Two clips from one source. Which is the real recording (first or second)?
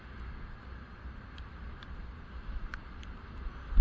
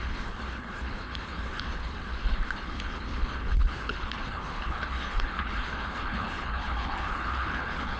first